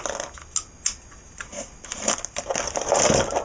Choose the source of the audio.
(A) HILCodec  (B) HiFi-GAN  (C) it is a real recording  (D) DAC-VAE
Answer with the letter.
C